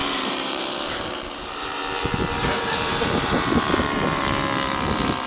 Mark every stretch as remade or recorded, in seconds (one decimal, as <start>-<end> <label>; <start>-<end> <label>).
0.0-1.8 remade; 1.8-2.4 recorded; 2.4-4.2 remade; 4.2-5.3 recorded